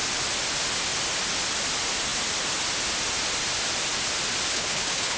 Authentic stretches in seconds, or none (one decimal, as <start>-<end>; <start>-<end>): 0.0-4.5